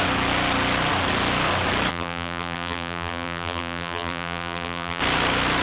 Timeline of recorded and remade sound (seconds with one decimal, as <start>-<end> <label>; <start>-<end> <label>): 0.0-1.9 recorded; 1.9-5.0 remade; 5.0-5.6 recorded